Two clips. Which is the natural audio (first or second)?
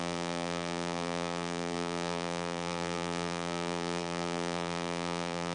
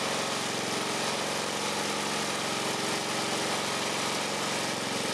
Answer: second